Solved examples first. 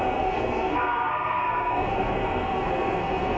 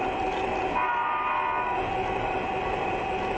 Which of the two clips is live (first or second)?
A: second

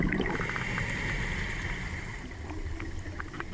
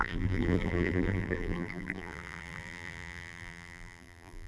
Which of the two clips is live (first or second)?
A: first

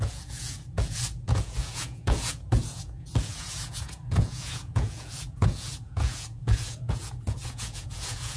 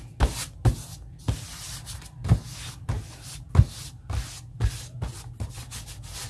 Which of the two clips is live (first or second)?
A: second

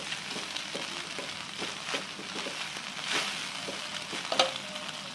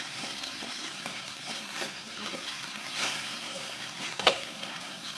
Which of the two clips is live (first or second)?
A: first